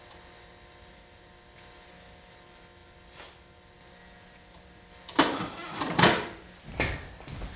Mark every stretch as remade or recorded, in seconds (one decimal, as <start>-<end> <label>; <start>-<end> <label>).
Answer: 0.0-7.6 remade